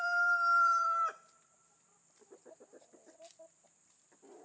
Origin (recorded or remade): remade